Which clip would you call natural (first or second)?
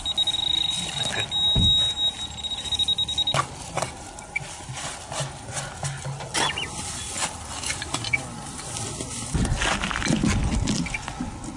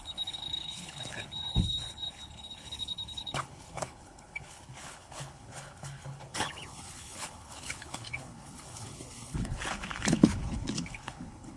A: first